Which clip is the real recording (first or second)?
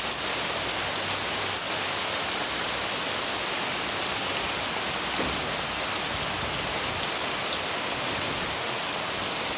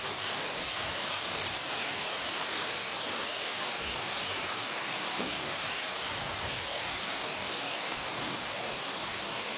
first